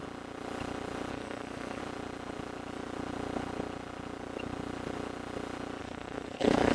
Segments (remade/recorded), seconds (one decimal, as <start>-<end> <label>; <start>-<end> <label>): 0.0-1.1 recorded; 1.1-1.8 remade; 1.8-5.8 recorded; 5.8-6.7 remade